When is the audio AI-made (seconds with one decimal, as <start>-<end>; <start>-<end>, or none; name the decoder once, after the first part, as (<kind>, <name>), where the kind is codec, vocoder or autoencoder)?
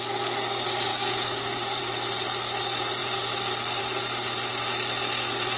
0.9-1.8 (codec, DAC)